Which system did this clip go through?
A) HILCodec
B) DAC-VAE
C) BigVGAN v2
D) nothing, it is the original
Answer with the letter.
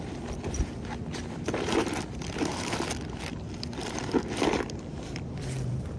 C